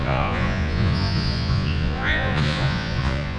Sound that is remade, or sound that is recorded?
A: remade